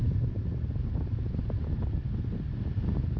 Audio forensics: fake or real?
real